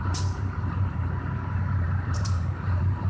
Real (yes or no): no